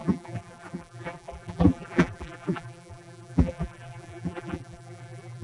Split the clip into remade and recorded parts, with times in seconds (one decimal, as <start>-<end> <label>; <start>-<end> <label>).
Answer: 0.0-5.4 remade